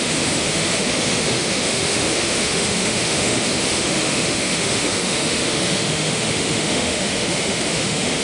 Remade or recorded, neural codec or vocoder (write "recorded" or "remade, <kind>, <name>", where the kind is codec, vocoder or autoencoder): remade, autoencoder, DAC-VAE